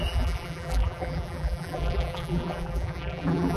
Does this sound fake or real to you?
fake